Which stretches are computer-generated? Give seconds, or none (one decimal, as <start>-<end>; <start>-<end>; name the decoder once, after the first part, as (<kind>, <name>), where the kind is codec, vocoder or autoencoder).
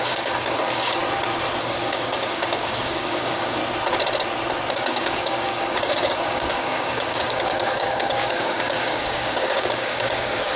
0.0-1.0 (codec, DAC); 1.6-3.6; 4.7-10.6